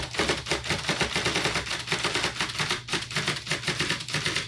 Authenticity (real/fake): real